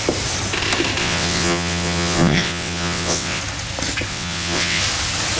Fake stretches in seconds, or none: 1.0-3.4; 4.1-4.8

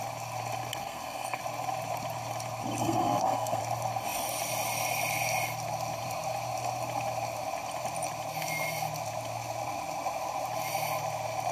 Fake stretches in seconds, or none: 0.8-1.4; 2.8-3.6

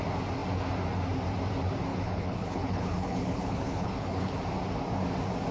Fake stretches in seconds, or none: 1.9-4.3

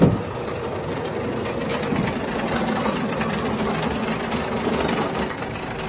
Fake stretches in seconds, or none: 0.0-1.7; 2.3-5.9

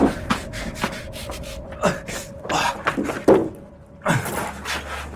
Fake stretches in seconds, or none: none

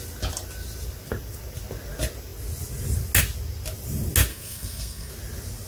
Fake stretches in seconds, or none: 4.3-5.1